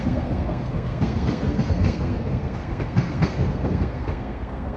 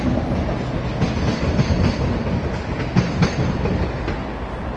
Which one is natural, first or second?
second